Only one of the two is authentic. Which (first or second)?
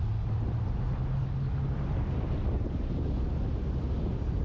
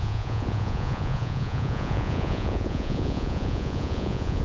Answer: first